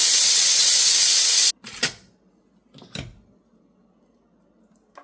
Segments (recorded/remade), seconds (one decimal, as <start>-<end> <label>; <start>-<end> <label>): 0.0-1.5 remade; 1.5-5.0 recorded